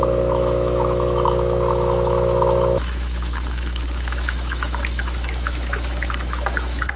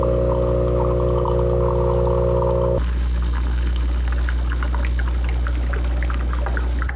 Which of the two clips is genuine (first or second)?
second